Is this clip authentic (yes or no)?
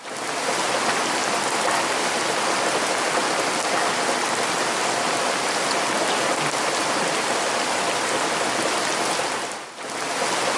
yes